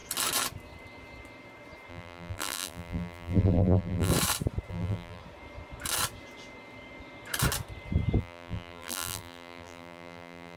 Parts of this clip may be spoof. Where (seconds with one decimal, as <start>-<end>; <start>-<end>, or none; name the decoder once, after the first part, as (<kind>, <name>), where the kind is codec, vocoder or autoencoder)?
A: 1.9-4.1 (vocoder, BigVGAN v2); 4.7-5.2; 8.2-10.6